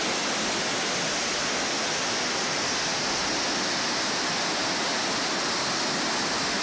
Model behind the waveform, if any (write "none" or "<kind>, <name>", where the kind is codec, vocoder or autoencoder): none